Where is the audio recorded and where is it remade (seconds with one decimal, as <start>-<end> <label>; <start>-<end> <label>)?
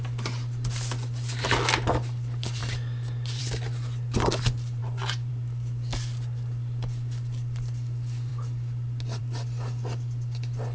0.0-10.7 recorded